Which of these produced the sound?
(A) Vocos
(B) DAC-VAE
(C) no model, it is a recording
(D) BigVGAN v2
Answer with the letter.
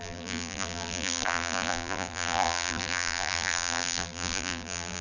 D